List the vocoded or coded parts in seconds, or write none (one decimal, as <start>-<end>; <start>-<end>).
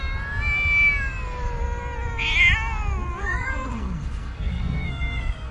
3.2-5.5